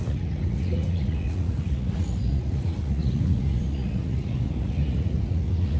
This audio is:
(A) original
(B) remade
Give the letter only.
B